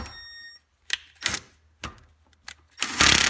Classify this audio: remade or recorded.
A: recorded